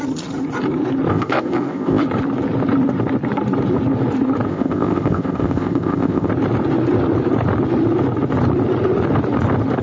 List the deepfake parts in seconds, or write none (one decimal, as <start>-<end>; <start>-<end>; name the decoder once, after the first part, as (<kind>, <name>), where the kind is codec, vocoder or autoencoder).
1.1-2.0 (codec, ZipCodec); 4.5-6.3